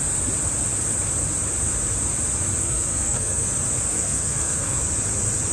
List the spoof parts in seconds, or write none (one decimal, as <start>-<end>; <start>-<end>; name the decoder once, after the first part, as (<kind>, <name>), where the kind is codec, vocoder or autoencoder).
2.6-3.5 (codec, SNAC); 3.9-4.8